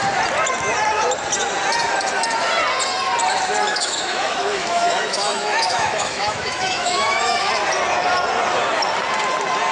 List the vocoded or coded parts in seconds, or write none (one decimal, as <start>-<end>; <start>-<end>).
3.7-7.5